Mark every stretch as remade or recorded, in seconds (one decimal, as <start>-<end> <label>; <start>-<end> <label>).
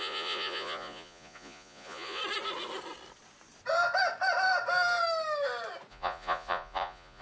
0.0-2.2 remade; 2.2-5.9 recorded; 5.9-7.2 remade